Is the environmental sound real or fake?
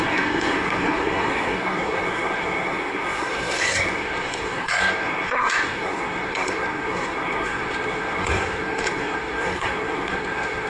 fake